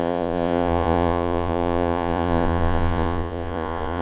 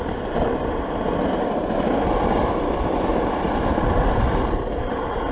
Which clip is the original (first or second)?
second